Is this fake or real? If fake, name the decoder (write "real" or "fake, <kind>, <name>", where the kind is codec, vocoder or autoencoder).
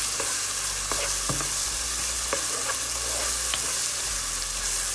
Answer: real